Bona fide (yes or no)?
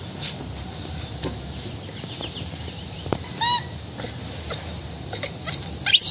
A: yes